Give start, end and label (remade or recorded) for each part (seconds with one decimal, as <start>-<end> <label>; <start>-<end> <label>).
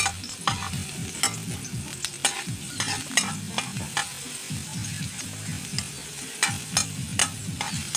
0.0-8.0 recorded